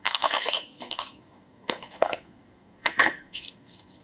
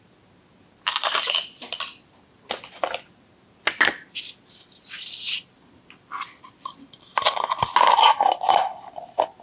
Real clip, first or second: second